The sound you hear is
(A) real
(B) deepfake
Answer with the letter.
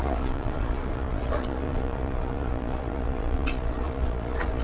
B